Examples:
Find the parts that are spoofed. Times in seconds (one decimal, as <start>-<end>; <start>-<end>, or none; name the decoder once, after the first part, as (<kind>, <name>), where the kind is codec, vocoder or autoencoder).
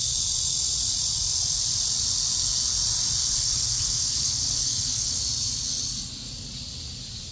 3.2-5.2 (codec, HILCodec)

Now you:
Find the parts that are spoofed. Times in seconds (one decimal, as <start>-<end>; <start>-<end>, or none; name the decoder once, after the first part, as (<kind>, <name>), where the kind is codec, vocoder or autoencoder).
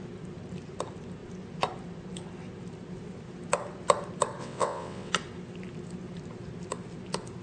4.4-5.1 (vocoder, WaveNeXt)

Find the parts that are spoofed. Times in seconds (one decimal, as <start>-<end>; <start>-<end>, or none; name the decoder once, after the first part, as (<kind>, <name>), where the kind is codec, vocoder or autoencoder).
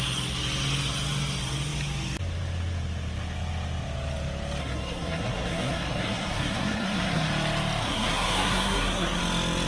4.6-7.3 (codec, SNAC); 7.8-9.2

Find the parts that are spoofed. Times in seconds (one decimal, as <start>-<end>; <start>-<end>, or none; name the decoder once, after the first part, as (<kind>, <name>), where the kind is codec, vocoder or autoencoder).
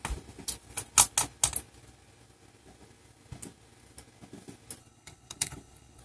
4.8-6.0 (codec, HILCodec)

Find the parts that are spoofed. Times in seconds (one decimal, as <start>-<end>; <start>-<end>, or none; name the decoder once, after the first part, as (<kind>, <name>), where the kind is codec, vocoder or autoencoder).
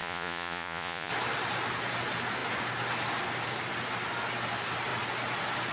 0.0-1.1 (vocoder, Vocos)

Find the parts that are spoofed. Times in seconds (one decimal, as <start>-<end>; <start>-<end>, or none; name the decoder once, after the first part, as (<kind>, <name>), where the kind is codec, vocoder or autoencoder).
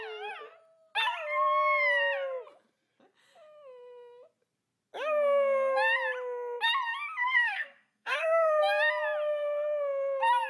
7.2-8.6 (codec, SNAC)